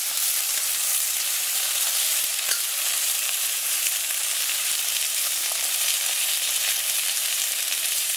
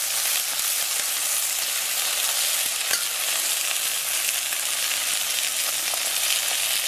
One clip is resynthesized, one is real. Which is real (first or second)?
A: second